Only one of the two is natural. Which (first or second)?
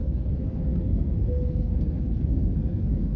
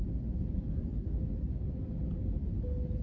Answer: second